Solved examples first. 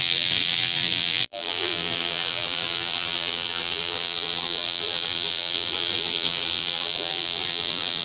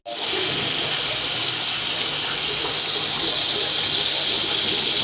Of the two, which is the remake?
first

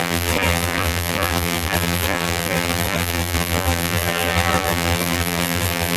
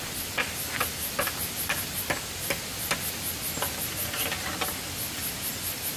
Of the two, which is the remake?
first